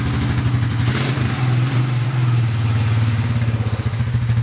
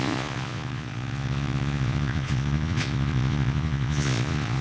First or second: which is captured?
first